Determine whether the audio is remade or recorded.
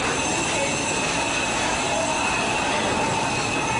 recorded